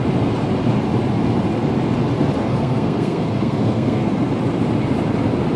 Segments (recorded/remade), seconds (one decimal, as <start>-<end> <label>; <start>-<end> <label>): 0.0-2.4 recorded; 2.4-4.1 remade; 4.1-5.6 recorded